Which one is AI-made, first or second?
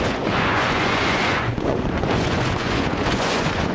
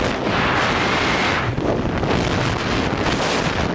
first